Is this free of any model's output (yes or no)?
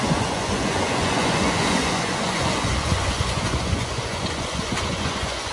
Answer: no